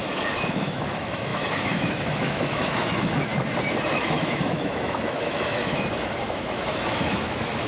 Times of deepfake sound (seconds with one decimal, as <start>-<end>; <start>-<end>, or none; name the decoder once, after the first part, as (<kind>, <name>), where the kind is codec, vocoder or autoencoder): 0.0-3.3 (autoencoder, DAC-VAE); 3.9-7.7